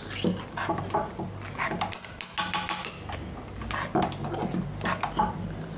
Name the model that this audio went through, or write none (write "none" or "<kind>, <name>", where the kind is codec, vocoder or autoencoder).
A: none